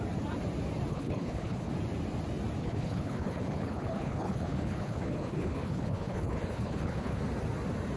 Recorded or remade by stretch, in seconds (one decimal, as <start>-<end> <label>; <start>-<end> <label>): 0.0-0.9 recorded; 0.9-1.7 remade; 1.7-2.6 recorded; 2.6-7.2 remade; 7.2-8.0 recorded